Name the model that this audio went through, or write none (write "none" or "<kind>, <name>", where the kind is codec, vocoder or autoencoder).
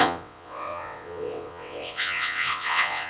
vocoder, WaveNeXt